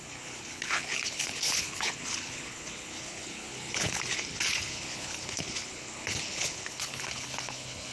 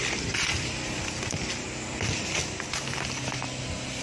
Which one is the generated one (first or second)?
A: first